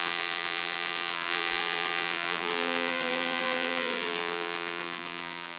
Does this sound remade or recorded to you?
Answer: remade